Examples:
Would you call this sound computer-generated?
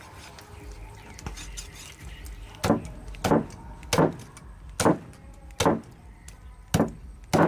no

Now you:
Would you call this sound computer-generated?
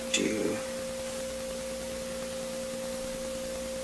no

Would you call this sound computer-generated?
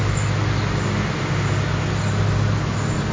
no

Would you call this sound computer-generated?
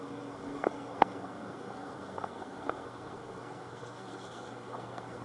yes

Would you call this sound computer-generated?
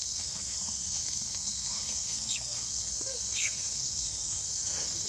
yes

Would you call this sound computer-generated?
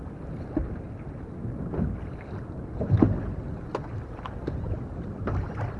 no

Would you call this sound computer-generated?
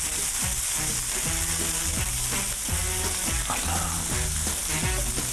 no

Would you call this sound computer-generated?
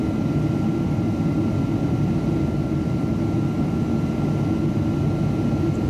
no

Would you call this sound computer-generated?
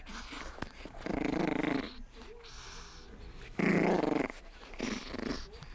no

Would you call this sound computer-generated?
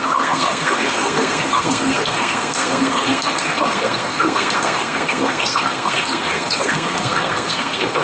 yes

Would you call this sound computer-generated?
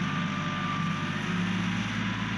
no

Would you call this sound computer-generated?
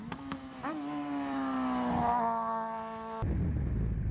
no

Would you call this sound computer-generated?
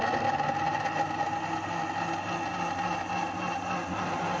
no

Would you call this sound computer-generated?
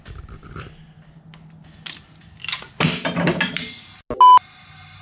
no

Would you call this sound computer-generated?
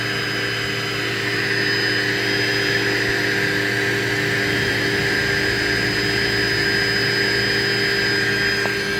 no